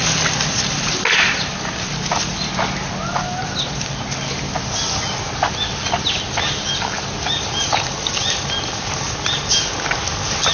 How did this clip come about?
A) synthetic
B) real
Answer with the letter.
B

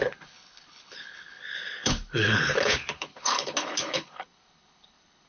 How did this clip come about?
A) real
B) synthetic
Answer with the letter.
B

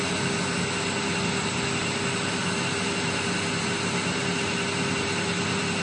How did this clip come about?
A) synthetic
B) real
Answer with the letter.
B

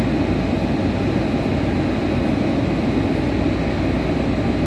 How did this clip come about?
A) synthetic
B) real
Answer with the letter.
B